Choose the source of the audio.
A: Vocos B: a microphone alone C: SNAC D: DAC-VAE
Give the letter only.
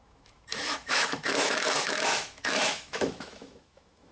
D